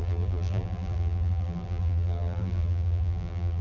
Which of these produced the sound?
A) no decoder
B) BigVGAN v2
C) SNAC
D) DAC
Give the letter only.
B